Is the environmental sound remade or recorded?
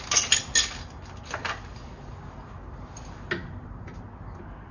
recorded